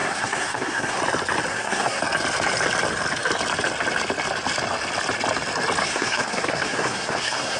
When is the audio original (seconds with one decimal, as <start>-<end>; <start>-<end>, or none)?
1.0-1.5; 2.0-5.8